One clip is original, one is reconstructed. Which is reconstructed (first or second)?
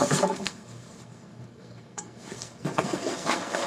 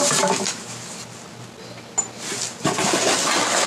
first